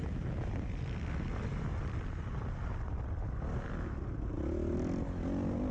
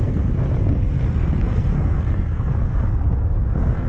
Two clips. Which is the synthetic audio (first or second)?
second